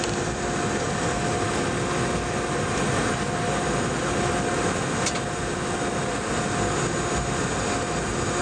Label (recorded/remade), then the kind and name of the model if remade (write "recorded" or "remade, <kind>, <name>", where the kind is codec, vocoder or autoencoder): recorded